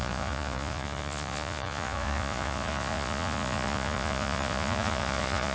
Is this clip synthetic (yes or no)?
yes